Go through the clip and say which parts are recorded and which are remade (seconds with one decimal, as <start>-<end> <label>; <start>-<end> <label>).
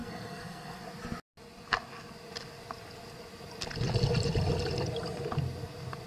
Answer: 0.0-0.8 remade; 0.8-6.1 recorded